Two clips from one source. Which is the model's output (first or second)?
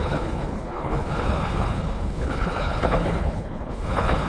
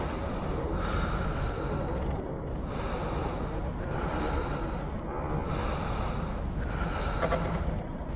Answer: first